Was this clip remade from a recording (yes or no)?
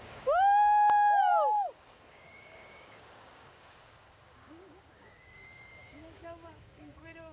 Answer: yes